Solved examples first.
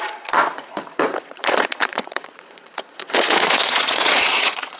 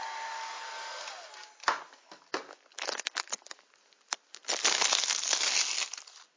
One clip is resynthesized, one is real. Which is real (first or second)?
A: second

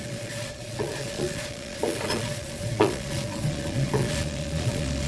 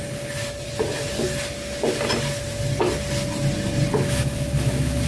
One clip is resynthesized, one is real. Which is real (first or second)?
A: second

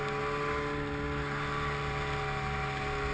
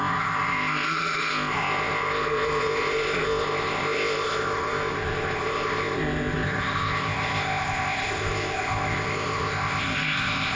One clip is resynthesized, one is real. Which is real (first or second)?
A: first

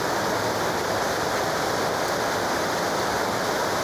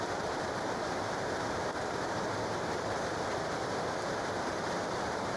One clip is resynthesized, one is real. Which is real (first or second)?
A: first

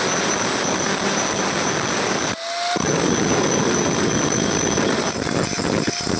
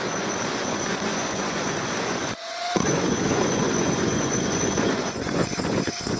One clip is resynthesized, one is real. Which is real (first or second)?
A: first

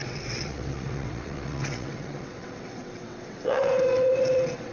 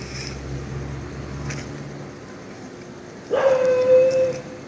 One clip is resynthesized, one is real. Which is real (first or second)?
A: second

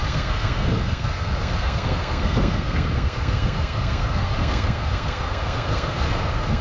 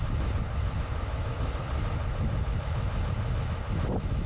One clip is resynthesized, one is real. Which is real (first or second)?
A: second